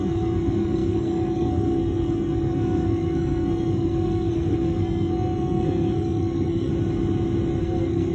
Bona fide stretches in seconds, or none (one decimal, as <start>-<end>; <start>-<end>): 6.7-7.6